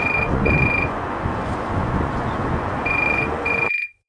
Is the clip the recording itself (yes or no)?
no